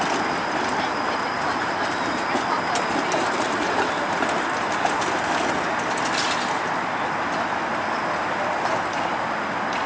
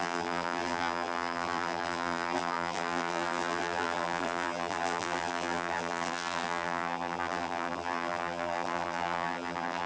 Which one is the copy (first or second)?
second